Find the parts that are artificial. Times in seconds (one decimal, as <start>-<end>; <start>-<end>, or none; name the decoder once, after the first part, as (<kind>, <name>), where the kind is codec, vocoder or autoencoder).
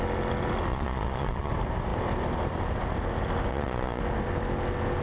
0.7-1.5 (vocoder, Vocos); 3.5-4.0